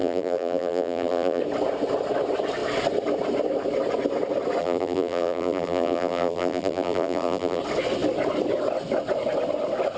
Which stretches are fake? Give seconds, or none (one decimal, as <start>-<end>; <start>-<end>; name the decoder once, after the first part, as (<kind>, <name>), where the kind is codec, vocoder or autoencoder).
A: 0.0-1.4 (vocoder, BigVGAN v2); 4.6-7.6